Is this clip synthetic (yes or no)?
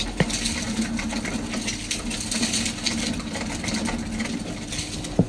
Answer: no